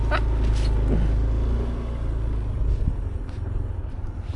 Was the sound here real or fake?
real